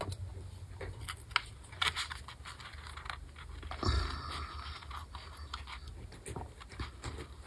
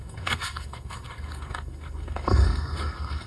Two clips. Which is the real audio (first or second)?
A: first